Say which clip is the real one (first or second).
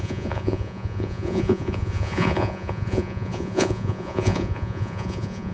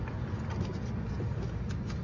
second